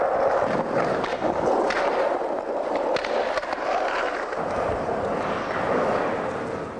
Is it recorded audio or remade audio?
recorded